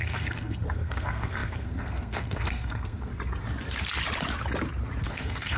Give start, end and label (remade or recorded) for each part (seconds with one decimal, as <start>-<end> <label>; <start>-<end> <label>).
0.0-3.1 remade; 3.1-5.1 recorded; 5.1-5.6 remade